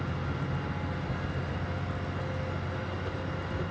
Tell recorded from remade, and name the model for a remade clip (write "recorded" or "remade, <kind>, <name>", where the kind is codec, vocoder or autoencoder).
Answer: recorded